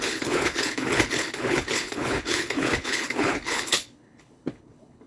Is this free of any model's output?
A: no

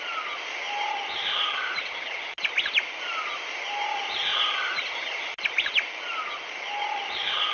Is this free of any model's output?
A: yes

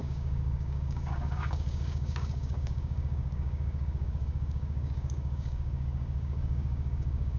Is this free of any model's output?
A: no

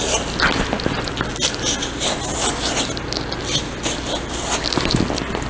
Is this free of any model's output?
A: yes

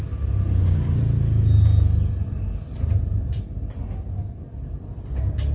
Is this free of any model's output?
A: yes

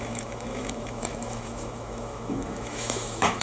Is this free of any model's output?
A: no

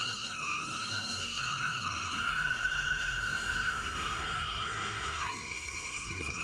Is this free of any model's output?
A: no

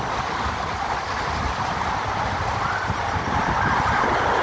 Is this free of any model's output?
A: yes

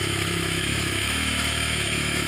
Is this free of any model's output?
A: no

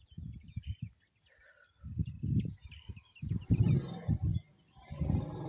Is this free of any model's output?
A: yes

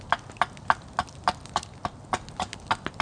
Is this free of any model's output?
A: yes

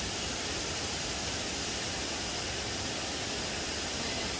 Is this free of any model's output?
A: no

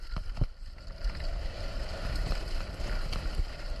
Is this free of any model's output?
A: no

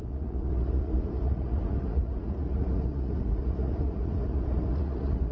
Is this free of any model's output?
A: no